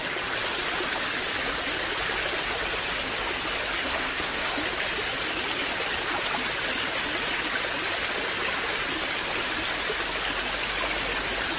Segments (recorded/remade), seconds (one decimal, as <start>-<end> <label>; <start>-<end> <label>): 0.0-3.8 recorded; 3.8-4.5 remade; 4.5-11.6 recorded